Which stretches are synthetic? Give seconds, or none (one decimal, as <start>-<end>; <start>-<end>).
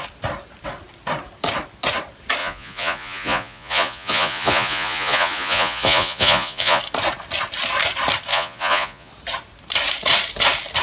2.4-6.8; 8.3-9.1